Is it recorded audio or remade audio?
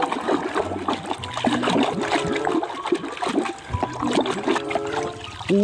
recorded